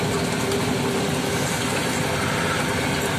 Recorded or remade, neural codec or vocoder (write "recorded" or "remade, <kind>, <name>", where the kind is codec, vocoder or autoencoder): recorded